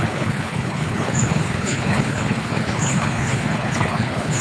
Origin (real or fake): fake